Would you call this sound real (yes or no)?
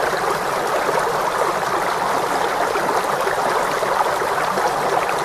yes